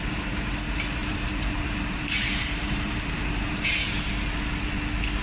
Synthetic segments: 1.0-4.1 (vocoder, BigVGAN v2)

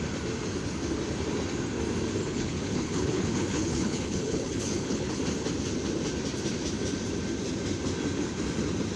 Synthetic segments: 2.2-5.2 (codec, HILCodec)

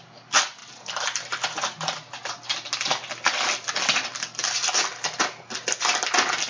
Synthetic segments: 0.6-2.1 (vocoder, BigVGAN v2)